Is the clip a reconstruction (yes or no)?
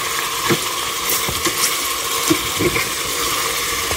no